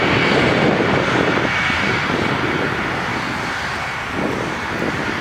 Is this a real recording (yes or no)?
yes